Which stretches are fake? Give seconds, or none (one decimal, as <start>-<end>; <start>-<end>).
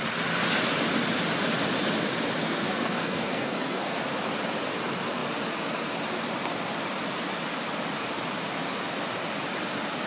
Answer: 2.4-4.0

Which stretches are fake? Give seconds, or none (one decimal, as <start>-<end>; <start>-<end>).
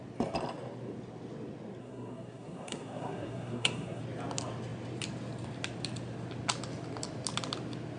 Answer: 1.8-4.0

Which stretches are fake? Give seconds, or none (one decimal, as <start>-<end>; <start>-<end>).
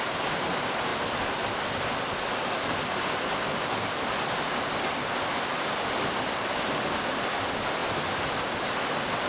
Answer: none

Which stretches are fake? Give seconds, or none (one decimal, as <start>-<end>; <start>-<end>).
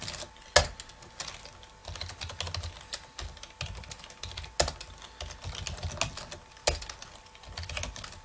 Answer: none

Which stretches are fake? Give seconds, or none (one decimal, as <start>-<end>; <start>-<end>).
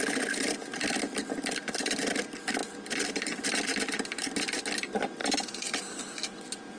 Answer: none